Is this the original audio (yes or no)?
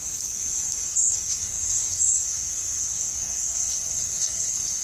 no